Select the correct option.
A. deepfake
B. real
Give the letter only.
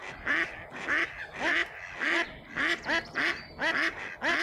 B